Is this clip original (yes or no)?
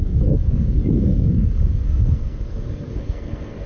no